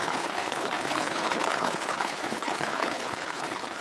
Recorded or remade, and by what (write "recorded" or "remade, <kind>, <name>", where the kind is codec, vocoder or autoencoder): remade, codec, HILCodec